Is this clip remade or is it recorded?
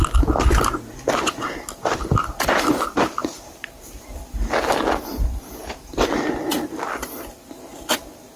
recorded